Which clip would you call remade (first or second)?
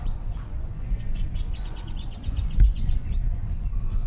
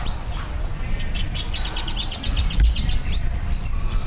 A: first